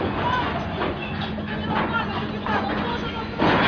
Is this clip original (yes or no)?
no